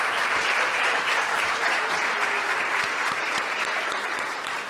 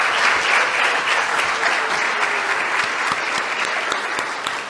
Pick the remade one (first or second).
first